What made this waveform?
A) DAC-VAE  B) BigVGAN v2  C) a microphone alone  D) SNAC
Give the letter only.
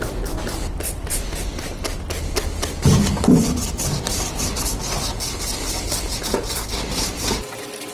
C